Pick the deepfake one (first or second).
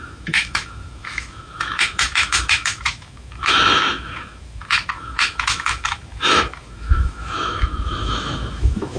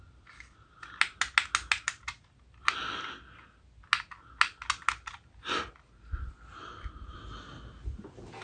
first